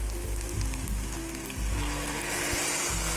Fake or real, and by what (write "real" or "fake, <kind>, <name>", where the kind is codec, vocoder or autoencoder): real